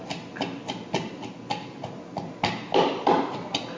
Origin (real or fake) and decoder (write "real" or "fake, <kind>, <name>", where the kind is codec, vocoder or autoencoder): real